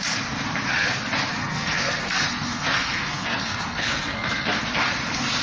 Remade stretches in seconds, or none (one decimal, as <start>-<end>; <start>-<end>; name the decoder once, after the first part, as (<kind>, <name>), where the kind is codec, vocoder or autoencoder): 1.4-4.6 (codec, SNAC)